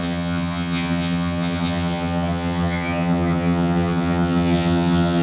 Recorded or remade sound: remade